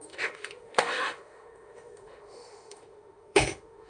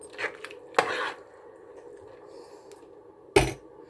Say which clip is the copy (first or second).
first